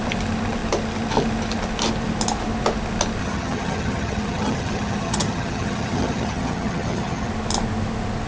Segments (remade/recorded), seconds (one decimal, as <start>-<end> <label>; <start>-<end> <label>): 0.0-3.2 recorded; 3.2-7.3 remade; 7.3-8.3 recorded